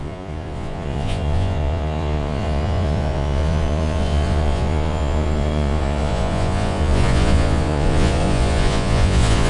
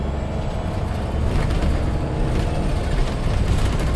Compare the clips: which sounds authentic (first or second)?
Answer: second